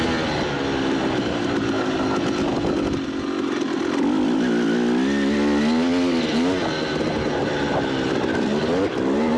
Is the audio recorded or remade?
recorded